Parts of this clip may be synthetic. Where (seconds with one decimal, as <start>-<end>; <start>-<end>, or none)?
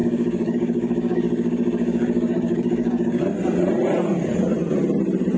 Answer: 0.0-3.2